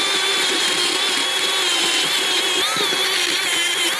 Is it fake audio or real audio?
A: real